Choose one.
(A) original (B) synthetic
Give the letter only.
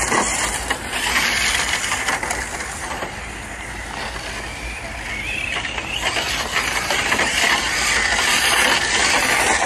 A